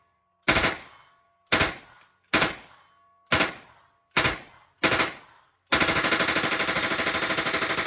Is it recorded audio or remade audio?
recorded